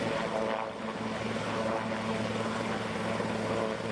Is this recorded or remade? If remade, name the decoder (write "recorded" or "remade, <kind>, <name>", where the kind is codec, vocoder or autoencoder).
recorded